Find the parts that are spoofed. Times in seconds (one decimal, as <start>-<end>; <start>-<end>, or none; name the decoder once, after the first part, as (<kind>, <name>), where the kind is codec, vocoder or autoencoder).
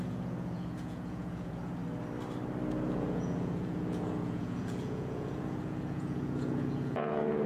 0.0-1.8 (vocoder, Vocos); 2.7-7.5